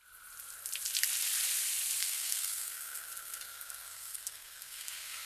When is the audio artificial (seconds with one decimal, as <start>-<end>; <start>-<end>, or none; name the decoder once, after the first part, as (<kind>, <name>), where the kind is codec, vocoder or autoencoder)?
2.0-5.3 (codec, SNAC)